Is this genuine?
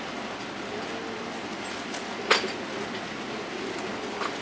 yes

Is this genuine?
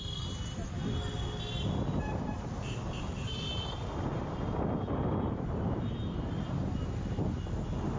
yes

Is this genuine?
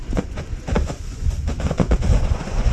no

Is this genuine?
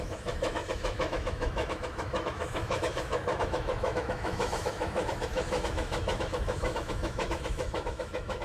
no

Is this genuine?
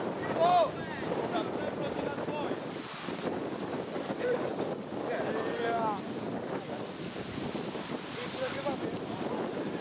yes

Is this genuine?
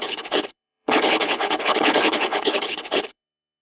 no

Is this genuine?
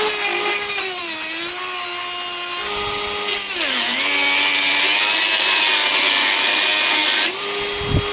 yes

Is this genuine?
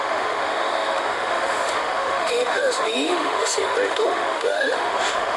no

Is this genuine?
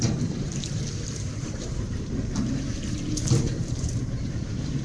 no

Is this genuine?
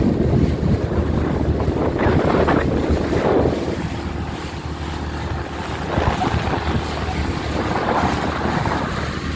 yes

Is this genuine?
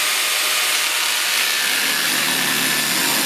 yes